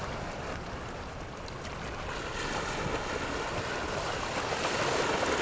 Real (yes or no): yes